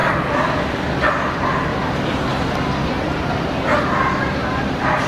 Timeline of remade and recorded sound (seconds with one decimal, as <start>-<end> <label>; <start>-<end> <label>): 0.0-1.7 recorded; 1.7-3.3 remade; 3.3-4.4 recorded; 4.4-5.1 remade